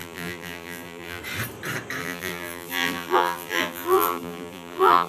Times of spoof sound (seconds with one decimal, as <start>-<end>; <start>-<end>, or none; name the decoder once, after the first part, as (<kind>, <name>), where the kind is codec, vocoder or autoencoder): 0.0-1.2 (vocoder, BigVGAN v2); 2.0-5.1